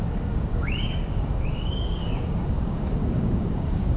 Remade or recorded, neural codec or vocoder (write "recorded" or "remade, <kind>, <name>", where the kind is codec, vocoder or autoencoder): remade, codec, DAC